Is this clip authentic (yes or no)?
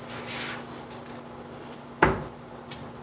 yes